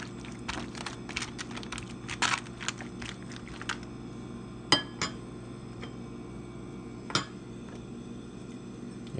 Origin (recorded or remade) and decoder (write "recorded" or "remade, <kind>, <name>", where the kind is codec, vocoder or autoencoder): recorded